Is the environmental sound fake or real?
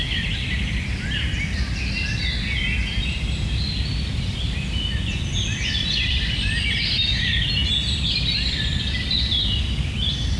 real